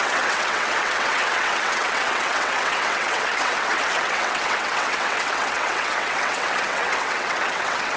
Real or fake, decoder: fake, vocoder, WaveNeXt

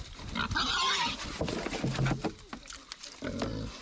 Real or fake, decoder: real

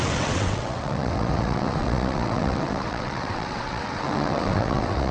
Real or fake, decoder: fake, vocoder, WaveNeXt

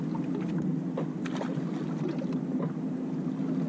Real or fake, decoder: real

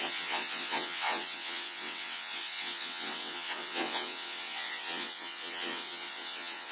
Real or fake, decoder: fake, vocoder, WaveNeXt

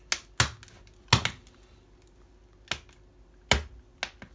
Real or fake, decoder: real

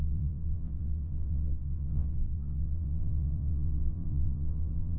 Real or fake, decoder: fake, vocoder, WaveNeXt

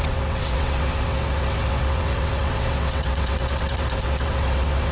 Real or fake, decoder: fake, vocoder, WaveNeXt